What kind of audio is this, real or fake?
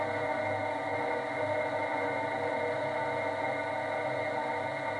real